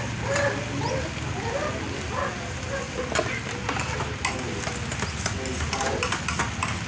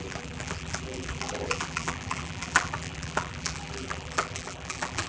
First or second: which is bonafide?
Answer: first